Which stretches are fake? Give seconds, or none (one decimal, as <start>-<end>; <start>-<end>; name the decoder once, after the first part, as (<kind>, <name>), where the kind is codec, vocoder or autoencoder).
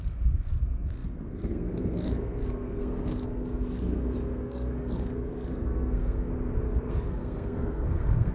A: 0.0-6.3 (codec, SNAC); 6.9-8.3